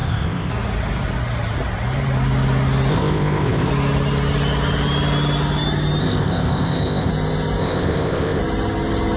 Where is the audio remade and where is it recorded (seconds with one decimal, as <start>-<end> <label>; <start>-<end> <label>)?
0.0-0.5 remade; 0.5-2.9 recorded; 2.9-3.7 remade; 3.7-6.0 recorded; 6.0-7.1 remade; 7.1-7.6 recorded; 7.6-8.4 remade; 8.4-9.2 recorded